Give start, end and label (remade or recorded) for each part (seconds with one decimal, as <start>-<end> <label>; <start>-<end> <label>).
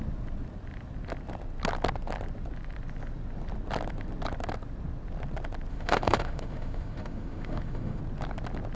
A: 0.0-5.7 recorded; 5.7-8.0 remade; 8.0-8.8 recorded